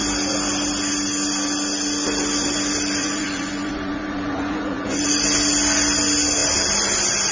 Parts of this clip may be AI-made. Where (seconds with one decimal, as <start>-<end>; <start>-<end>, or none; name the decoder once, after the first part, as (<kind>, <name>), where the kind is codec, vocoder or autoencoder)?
3.0-5.1 (vocoder, Vocos)